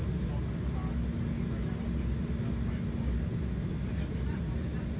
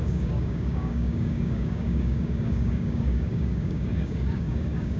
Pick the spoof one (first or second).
second